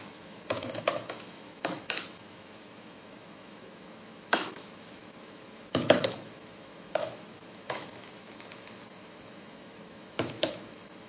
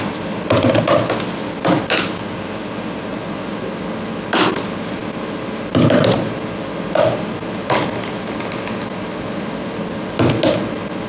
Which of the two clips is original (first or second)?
second